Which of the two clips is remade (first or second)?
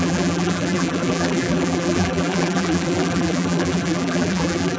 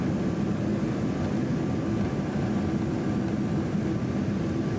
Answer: first